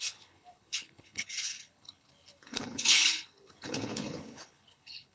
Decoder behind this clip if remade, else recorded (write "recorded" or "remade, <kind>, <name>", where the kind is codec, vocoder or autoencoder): remade, codec, HILCodec